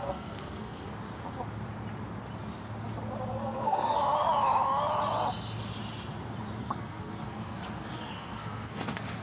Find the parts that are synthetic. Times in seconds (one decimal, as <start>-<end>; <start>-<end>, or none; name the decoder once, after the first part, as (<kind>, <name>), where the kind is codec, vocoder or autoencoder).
0.0-0.9 (codec, SNAC); 3.3-4.0; 6.6-9.2